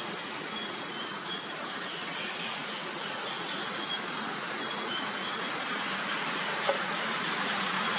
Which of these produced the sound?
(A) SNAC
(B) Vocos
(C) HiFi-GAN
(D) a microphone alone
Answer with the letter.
B